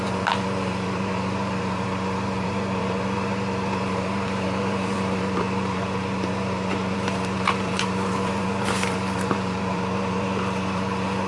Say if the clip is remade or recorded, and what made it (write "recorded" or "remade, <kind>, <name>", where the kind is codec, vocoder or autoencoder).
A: remade, vocoder, BigVGAN v2